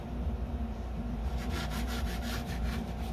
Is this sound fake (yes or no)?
yes